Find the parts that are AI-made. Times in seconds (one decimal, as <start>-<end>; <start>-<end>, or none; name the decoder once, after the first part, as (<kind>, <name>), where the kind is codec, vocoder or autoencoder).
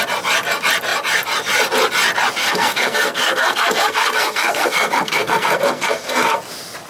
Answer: 2.4-6.4 (codec, SNAC)